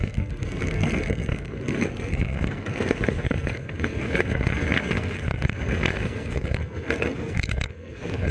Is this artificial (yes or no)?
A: yes